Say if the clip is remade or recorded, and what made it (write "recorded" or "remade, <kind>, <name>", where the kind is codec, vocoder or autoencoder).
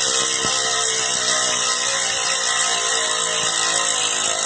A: recorded